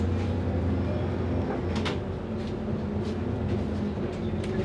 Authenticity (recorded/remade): recorded